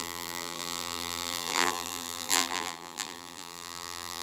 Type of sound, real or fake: fake